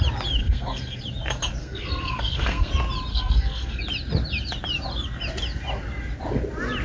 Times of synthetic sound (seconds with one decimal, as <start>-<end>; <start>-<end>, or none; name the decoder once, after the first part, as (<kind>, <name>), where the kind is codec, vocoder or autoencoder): 0.4-1.0 (codec, SNAC); 1.6-2.7; 3.1-3.8